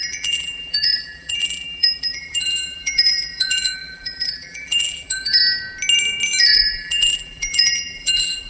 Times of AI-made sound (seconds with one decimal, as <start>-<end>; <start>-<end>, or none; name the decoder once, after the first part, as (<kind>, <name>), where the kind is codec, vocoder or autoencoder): 0.0-5.4 (vocoder, BigVGAN v2); 6.4-8.5